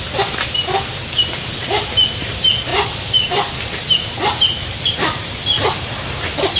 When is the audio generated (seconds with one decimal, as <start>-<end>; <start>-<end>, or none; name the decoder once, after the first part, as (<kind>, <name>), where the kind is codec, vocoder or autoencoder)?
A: 2.7-5.3 (vocoder, BigVGAN v2)